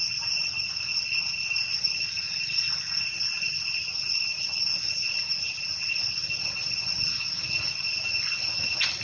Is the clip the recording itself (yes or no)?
yes